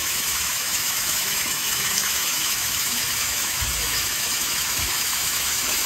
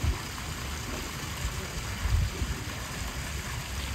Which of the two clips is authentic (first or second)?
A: second